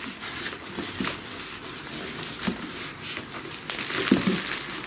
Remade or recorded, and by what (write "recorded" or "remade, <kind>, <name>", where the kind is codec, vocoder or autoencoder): recorded